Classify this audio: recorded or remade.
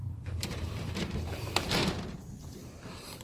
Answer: remade